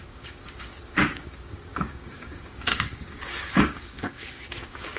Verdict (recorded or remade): remade